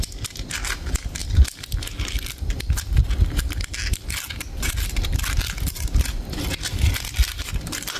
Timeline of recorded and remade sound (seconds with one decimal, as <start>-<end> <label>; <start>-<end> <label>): 0.0-8.0 recorded